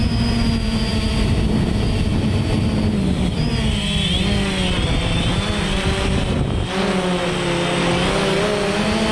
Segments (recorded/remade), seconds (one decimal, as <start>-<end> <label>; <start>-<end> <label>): 0.0-7.8 recorded; 7.8-8.4 remade; 8.4-9.1 recorded